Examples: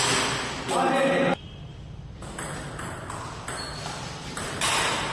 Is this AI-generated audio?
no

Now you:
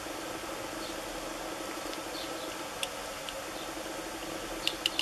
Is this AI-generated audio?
no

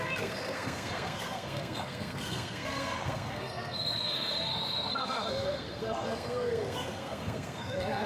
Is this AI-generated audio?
yes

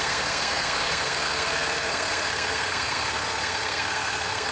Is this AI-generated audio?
yes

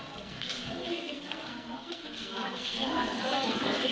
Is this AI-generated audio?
yes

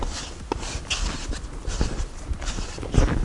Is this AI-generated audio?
no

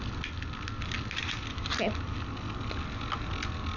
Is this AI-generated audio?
no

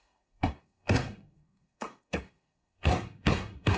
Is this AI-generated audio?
yes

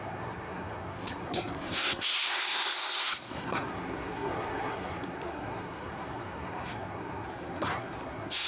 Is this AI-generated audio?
yes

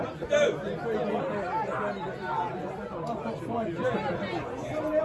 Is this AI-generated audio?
no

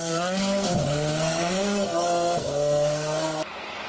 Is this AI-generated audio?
yes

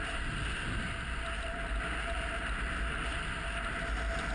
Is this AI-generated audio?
no